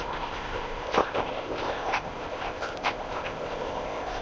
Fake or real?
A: fake